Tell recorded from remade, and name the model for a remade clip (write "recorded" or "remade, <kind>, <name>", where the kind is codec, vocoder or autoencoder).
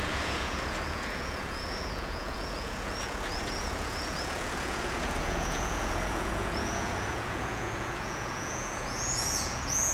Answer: remade, vocoder, Vocos